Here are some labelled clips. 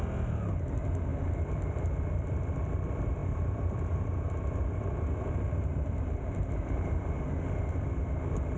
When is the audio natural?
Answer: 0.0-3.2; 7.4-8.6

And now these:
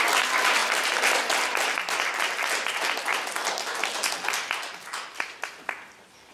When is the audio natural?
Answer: 0.0-0.6; 1.2-3.4; 3.9-6.3